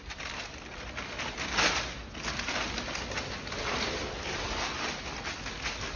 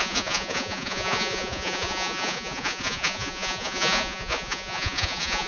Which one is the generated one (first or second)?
second